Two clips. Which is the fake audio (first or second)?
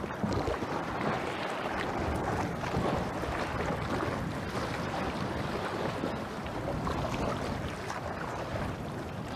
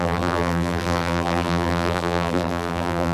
second